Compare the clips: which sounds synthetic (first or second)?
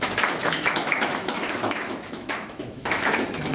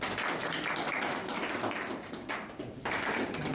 first